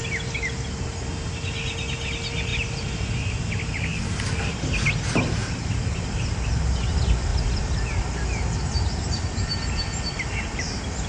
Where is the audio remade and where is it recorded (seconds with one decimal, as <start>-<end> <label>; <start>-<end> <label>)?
0.0-2.5 recorded; 2.5-3.1 remade; 3.1-5.4 recorded; 5.4-6.3 remade; 6.3-7.3 recorded; 7.3-10.7 remade; 10.7-11.1 recorded

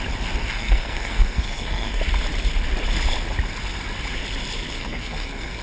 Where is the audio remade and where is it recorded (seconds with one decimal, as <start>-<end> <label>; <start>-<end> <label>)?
0.0-0.4 recorded; 0.4-2.0 remade; 2.0-4.8 recorded; 4.8-5.6 remade